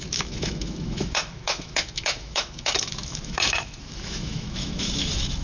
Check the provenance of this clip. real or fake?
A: fake